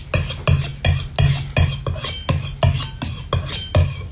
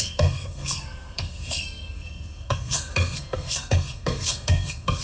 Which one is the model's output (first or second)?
second